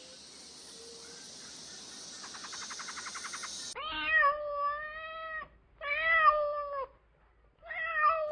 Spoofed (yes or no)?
no